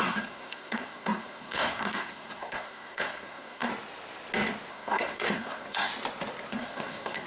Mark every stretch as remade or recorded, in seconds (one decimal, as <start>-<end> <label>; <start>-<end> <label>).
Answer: 0.0-3.7 remade; 3.7-4.7 recorded; 4.7-5.9 remade; 5.9-6.5 recorded; 6.5-7.3 remade